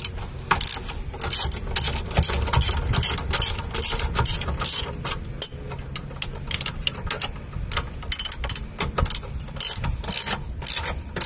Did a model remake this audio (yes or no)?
no